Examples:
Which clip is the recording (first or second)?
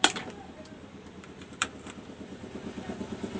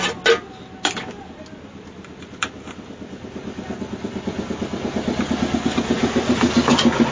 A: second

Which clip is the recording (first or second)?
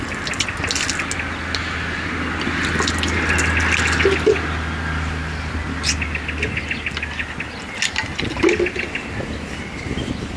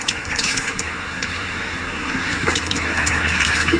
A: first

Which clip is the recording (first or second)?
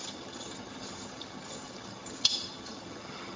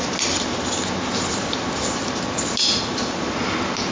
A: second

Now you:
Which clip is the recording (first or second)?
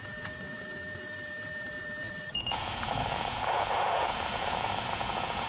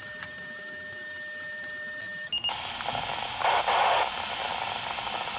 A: second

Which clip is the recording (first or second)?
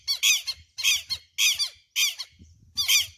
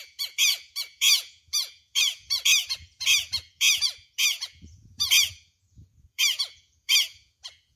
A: first